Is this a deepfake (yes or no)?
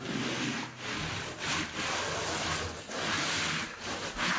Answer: no